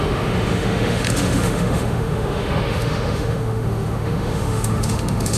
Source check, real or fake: fake